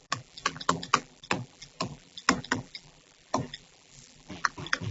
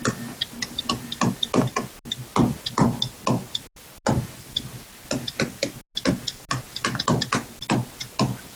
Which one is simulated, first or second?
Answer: first